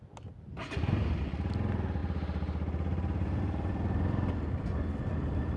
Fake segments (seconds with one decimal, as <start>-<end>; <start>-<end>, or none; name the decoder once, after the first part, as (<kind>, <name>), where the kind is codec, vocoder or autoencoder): none